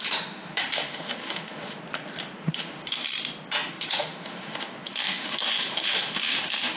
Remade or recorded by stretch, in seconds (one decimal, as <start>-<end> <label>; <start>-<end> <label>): 0.0-1.8 remade; 1.8-2.4 recorded; 2.4-3.1 remade; 3.1-3.7 recorded; 3.7-6.8 remade